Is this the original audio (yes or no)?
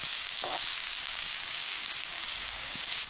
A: no